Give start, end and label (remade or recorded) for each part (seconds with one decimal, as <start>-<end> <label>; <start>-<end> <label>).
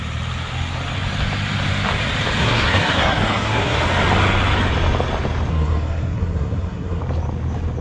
0.0-2.4 recorded; 2.4-3.8 remade; 3.8-5.5 recorded; 5.5-7.0 remade; 7.0-7.8 recorded